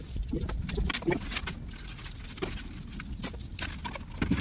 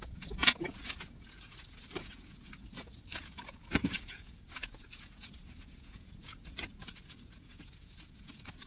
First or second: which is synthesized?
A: second